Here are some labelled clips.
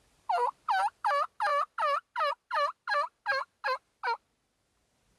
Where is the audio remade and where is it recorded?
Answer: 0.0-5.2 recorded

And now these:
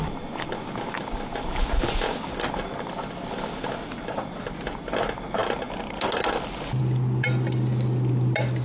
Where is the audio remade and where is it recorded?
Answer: 0.0-8.6 recorded

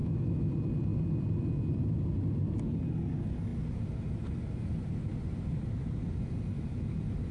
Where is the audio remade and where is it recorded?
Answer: 0.0-0.5 remade; 0.5-7.3 recorded